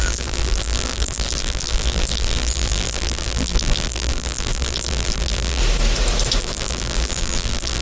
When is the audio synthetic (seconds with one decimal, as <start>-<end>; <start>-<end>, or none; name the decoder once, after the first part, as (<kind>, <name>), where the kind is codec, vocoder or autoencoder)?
0.0-5.6 (vocoder, BigVGAN v2); 6.4-7.8